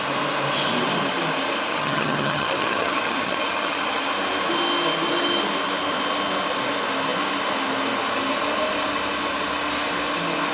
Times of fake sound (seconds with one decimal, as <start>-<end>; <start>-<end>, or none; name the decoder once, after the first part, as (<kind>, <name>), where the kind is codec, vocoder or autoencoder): 1.7-4.1 (vocoder, HiFi-GAN)